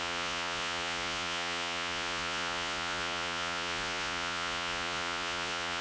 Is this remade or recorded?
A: remade